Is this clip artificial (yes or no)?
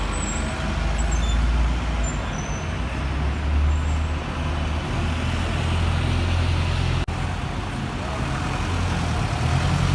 no